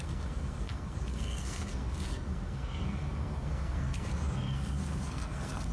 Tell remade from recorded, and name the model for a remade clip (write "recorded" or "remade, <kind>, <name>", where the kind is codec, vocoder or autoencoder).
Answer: remade, codec, SNAC